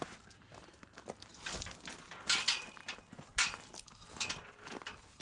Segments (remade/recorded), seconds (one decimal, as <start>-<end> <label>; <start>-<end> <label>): 0.0-5.2 recorded